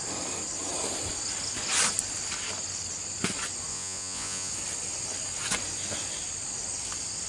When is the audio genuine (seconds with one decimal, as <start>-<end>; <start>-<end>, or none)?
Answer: 0.0-3.7; 4.5-7.3